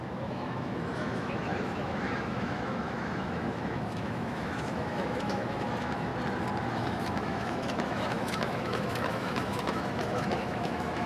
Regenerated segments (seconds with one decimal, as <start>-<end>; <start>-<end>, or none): 0.0-6.1; 6.7-11.1